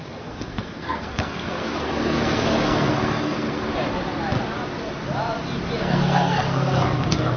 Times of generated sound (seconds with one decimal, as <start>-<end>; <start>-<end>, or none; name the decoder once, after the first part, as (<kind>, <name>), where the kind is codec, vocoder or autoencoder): 0.0-3.7 (codec, SNAC); 5.8-7.4

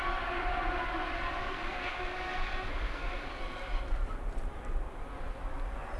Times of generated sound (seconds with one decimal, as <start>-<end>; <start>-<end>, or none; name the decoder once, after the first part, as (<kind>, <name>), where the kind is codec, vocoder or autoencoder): 1.4-3.4 (codec, SNAC)

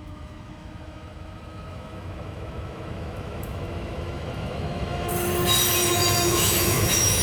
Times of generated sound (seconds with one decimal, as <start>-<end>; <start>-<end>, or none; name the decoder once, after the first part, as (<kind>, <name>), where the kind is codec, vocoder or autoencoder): 0.0-5.1 (autoencoder, DAC-VAE); 5.9-7.2

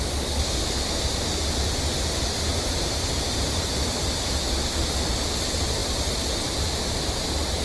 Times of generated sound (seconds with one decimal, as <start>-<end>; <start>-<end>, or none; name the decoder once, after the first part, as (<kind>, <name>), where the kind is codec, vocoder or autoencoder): 2.5-3.9 (vocoder, BigVGAN v2)

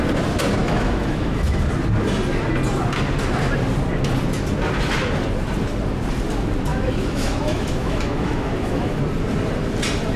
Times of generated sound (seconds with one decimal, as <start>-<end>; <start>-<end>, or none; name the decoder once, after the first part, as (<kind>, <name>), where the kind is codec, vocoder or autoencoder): 0.6-1.6 (autoencoder, DAC-VAE); 6.7-9.0

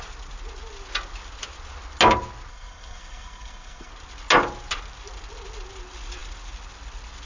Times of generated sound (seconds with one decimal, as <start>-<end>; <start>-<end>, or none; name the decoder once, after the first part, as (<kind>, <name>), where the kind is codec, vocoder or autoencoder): 2.5-3.9 (codec, SNAC)

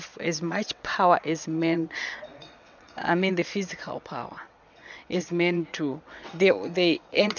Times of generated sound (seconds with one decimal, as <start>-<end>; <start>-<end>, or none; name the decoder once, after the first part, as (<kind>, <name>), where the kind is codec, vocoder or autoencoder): 0.0-7.4 (vocoder, WaveNeXt)

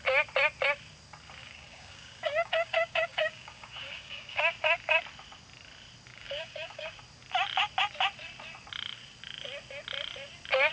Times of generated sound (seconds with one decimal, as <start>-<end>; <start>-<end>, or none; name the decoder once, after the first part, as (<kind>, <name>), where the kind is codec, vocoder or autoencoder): 1.4-4.4 (codec, DAC); 6.1-7.0